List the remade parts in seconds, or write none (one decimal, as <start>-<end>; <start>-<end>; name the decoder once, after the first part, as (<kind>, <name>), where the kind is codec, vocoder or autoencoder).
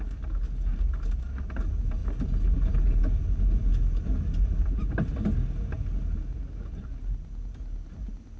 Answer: none